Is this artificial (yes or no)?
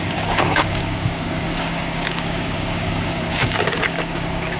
yes